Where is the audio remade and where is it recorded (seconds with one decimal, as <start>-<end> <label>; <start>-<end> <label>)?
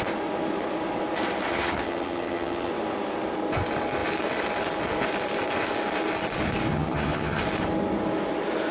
0.0-1.5 recorded; 1.5-2.7 remade; 2.7-6.7 recorded; 6.7-7.4 remade; 7.4-8.7 recorded